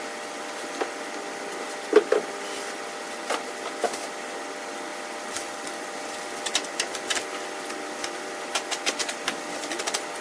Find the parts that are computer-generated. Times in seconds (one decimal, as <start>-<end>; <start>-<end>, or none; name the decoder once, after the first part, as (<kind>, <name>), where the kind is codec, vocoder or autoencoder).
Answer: 4.9-6.4 (vocoder, BigVGAN v2); 9.0-9.6